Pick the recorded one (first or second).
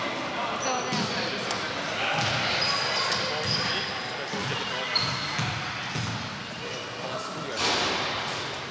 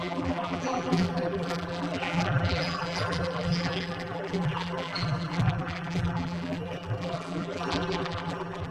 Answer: first